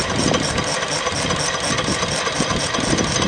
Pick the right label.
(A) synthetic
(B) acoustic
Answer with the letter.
B